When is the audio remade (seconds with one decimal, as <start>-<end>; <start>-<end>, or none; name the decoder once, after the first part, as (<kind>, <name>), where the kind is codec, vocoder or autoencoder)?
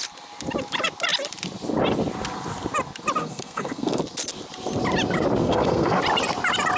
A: 3.2-4.0 (codec, SNAC); 5.4-6.0